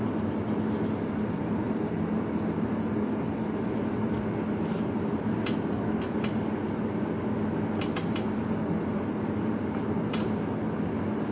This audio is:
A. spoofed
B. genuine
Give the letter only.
B